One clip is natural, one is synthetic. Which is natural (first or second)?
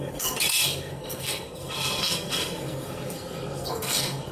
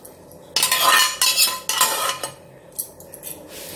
second